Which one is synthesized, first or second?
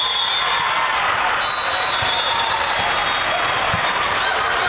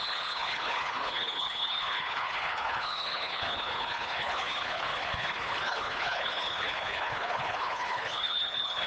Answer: second